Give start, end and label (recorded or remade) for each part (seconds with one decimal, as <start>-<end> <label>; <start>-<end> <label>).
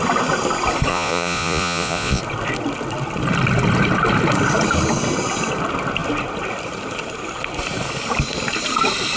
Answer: 0.0-0.9 recorded; 0.9-2.2 remade; 2.2-9.2 recorded